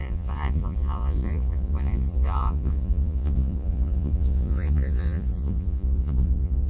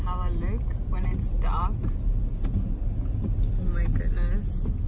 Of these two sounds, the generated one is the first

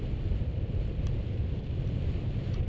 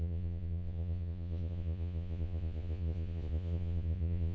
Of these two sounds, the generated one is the second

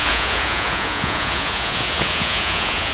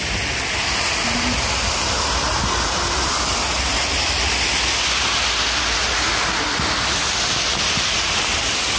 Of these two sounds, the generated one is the first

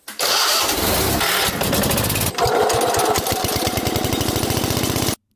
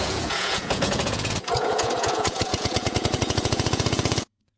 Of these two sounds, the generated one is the second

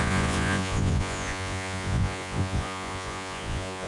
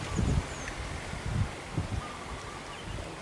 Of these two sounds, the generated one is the first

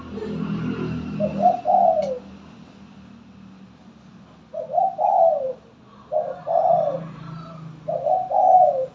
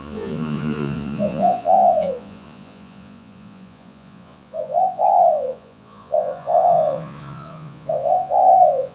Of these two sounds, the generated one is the second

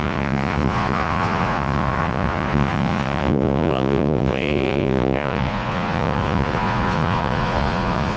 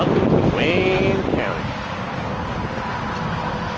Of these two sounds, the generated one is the first